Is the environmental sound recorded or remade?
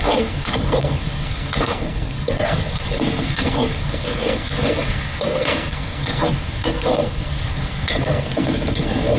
remade